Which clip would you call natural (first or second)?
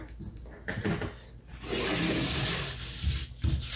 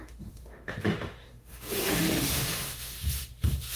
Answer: first